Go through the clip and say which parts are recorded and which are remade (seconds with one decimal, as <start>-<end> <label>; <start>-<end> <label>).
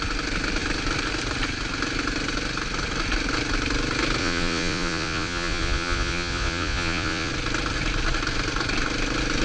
0.0-4.2 recorded; 4.2-7.3 remade; 7.3-9.4 recorded